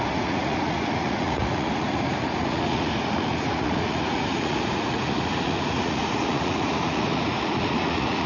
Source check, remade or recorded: remade